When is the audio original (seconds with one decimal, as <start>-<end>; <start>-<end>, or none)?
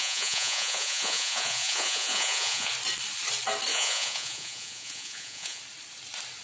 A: 2.7-3.7; 5.6-6.4